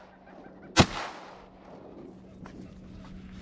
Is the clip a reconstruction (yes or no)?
no